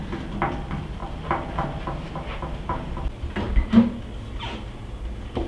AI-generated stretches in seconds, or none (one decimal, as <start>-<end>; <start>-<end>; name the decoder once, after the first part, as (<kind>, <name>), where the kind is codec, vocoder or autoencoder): none